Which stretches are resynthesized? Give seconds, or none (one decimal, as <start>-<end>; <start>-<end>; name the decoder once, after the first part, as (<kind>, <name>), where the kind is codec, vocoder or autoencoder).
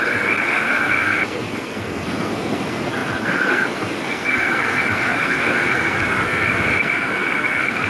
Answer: 0.0-7.9 (codec, SNAC)